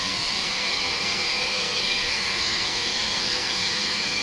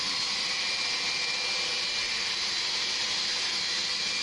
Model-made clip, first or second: first